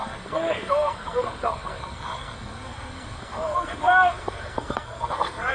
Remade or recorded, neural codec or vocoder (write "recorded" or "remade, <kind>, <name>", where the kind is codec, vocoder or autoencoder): remade, codec, SNAC